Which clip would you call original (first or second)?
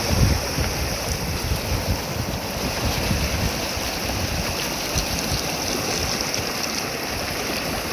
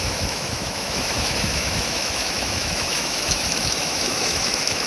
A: first